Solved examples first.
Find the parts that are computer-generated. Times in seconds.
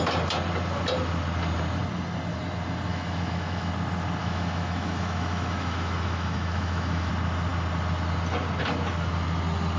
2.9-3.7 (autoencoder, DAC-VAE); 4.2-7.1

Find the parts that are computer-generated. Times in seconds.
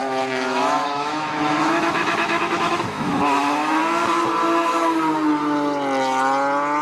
0.0-3.8 (autoencoder, DAC-VAE)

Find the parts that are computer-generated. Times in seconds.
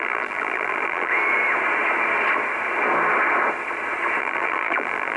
0.0-1.1 (vocoder, BigVGAN v2); 4.2-5.2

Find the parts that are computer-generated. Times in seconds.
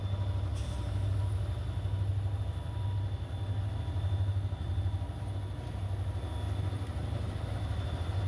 none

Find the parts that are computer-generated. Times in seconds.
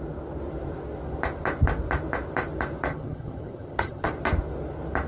2.9-4.1 (vocoder, HiFi-GAN)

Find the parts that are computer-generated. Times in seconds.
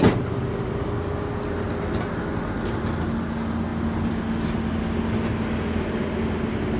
none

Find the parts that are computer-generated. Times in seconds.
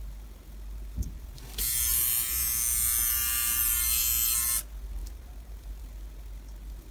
none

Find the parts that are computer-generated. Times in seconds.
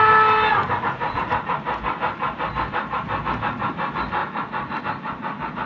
0.5-1.3 (vocoder, Vocos); 4.2-4.8